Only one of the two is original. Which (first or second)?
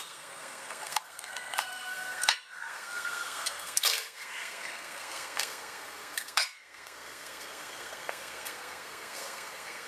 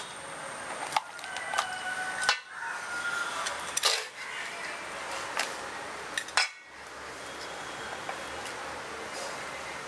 second